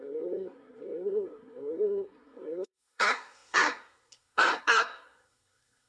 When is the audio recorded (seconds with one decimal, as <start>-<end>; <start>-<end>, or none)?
none